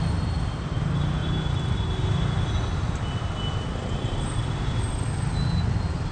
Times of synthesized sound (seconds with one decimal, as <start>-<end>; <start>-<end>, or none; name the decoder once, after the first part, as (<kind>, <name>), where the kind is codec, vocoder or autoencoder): none